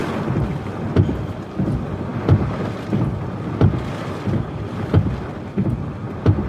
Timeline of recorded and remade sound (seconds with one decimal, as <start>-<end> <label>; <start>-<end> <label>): 0.0-6.5 recorded